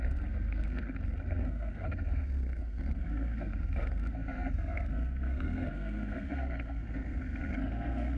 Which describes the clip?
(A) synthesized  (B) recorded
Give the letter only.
A